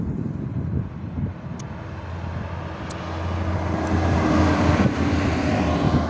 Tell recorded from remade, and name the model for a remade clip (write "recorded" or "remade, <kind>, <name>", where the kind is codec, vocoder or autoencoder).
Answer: recorded